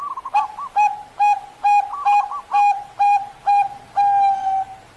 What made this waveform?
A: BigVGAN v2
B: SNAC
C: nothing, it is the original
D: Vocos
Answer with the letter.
C